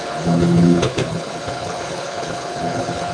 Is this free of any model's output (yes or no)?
no